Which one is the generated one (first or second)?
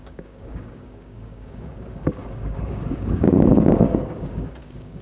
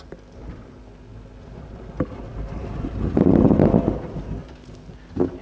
first